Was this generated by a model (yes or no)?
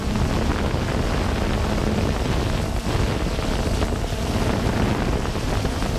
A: no